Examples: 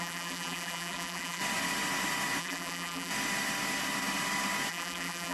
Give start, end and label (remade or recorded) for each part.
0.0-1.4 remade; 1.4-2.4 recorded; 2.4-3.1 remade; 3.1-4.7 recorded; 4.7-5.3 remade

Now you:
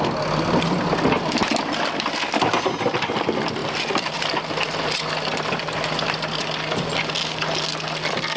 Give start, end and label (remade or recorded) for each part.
0.0-8.4 recorded

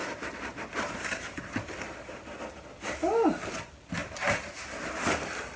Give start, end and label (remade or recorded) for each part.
0.0-5.6 recorded

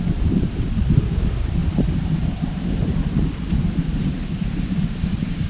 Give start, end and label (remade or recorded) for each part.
0.0-5.5 remade

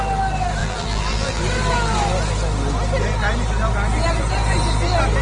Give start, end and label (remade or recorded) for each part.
0.0-0.6 recorded; 0.6-1.4 remade; 1.4-5.2 recorded

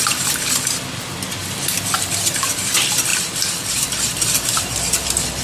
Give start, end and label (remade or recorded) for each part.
0.0-1.4 recorded; 1.4-2.1 remade; 2.1-3.1 recorded; 3.1-5.4 remade